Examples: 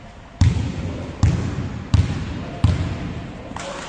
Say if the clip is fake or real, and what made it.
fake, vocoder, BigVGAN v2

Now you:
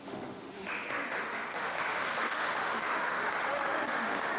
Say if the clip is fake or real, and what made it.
fake, autoencoder, DAC-VAE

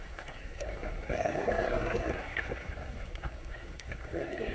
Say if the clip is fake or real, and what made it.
fake, codec, SNAC